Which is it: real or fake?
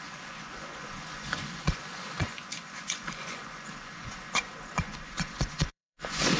fake